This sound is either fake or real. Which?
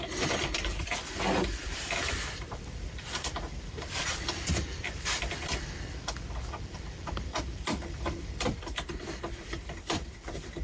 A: fake